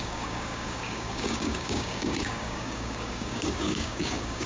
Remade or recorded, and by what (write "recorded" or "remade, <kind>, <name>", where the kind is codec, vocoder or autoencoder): remade, codec, DAC